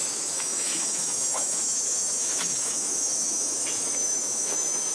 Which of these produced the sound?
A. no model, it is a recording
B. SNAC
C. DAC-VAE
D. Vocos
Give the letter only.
C